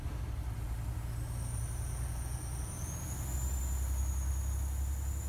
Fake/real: real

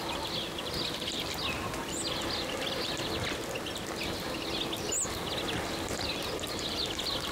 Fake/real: real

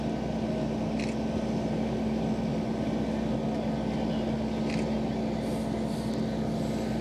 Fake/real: real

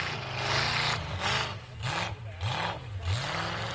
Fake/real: real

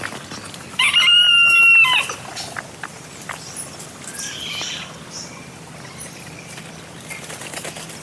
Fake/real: real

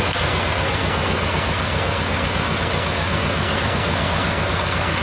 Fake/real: fake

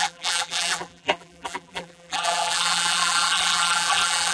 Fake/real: fake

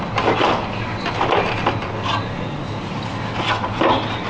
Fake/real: real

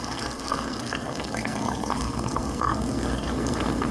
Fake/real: fake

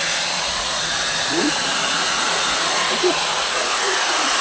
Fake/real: fake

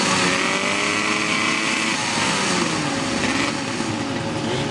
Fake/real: real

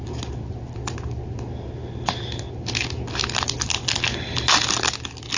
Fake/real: real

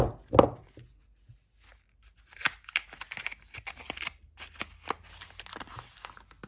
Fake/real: real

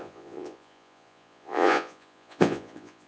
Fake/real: fake